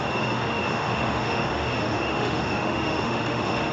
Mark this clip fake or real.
fake